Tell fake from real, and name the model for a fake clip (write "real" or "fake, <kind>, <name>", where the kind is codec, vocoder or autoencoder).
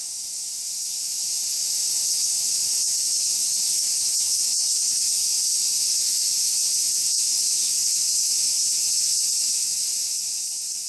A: fake, autoencoder, DAC-VAE